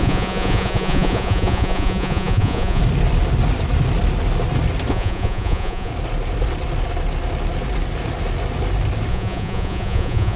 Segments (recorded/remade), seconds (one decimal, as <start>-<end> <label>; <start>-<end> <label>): 0.0-2.8 remade; 2.8-4.9 recorded; 4.9-5.9 remade; 5.9-9.1 recorded; 9.1-10.4 remade